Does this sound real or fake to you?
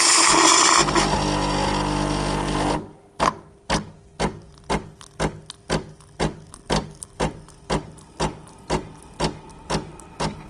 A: real